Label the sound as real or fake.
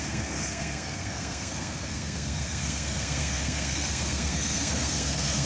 fake